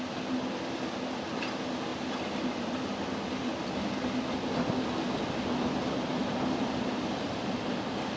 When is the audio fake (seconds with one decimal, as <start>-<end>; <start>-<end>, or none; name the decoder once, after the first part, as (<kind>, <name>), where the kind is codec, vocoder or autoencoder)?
6.2-8.2 (vocoder, BigVGAN v2)